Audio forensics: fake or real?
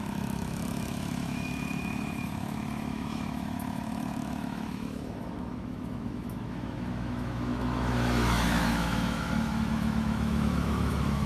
fake